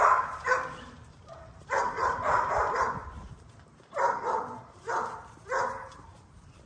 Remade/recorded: remade